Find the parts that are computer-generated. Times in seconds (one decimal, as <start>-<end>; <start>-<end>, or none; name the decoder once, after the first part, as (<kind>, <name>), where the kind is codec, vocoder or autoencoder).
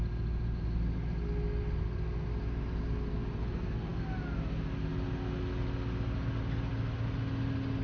none